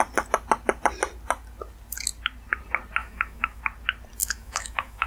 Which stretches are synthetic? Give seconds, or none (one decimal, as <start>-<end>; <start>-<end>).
3.0-3.6; 4.2-5.1